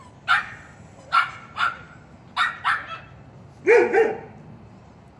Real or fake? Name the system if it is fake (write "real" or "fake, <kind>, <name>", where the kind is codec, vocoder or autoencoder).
real